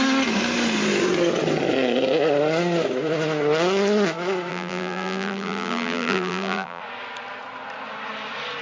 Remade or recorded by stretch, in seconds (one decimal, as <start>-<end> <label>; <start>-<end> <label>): 0.0-4.5 recorded; 4.5-6.8 remade; 6.8-8.6 recorded